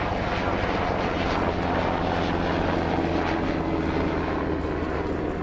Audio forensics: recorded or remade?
recorded